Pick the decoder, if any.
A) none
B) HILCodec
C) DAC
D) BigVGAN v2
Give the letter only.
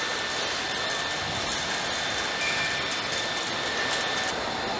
A